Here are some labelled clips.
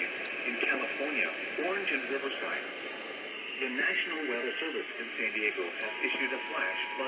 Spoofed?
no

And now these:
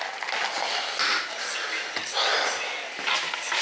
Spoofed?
no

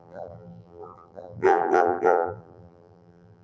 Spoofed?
yes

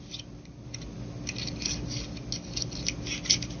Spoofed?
no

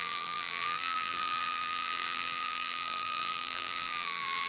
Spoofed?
yes